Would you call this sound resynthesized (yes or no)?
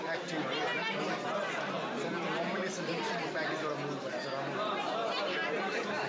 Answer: no